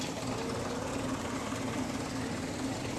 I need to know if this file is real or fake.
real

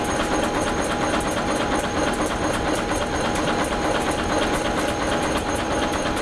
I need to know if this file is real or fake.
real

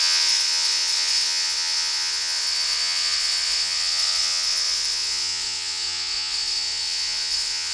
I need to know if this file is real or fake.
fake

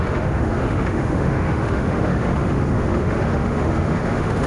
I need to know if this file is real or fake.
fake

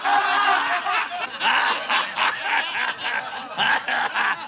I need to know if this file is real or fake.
real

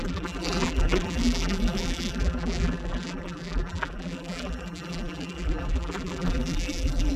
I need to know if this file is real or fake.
fake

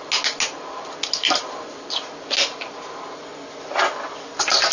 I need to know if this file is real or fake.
real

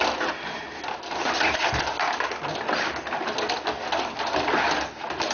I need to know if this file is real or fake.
real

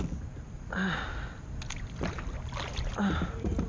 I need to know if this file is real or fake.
real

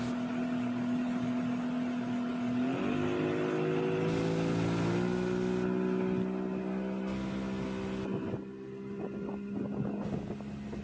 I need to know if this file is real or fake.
real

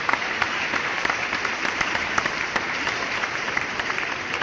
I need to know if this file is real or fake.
fake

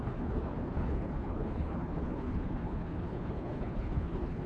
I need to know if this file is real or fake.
fake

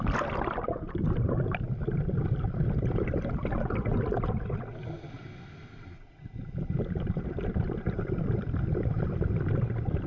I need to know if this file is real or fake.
real